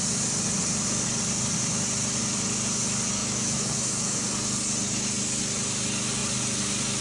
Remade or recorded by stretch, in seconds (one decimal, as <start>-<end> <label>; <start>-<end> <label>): 0.0-3.2 recorded; 3.2-4.2 remade; 4.2-7.0 recorded